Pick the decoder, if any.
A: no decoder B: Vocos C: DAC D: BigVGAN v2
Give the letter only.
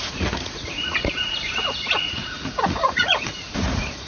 B